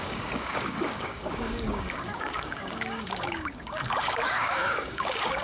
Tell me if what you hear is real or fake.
fake